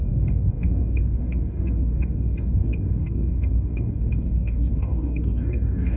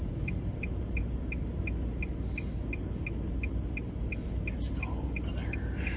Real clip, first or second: second